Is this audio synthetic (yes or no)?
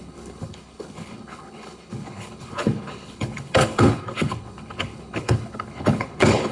yes